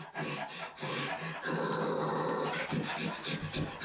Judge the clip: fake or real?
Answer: real